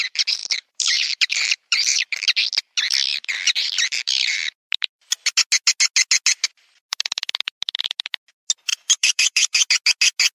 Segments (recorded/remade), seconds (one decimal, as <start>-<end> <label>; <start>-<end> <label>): 0.0-0.4 recorded; 0.4-2.0 remade; 2.0-3.1 recorded; 3.1-4.5 remade; 4.5-8.7 recorded; 8.7-9.7 remade; 9.7-10.3 recorded